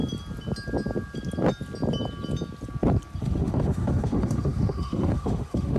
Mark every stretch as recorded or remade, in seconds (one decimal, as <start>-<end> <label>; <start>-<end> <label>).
0.0-3.2 recorded; 3.2-5.8 remade